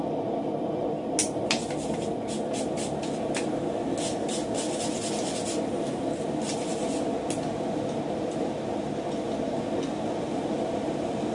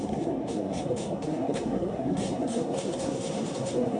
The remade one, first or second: second